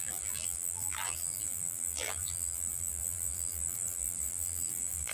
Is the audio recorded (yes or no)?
no